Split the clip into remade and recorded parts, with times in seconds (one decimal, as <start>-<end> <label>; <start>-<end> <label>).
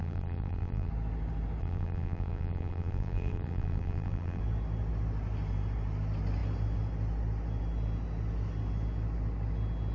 0.0-0.9 remade; 0.9-1.6 recorded; 1.6-4.4 remade; 4.4-9.9 recorded